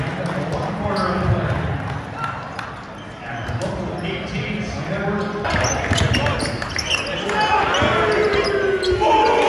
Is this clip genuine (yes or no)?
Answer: yes